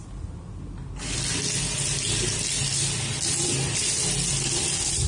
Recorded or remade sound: recorded